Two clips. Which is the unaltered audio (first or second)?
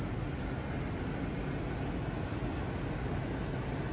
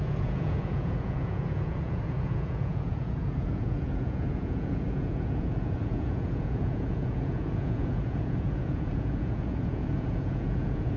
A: first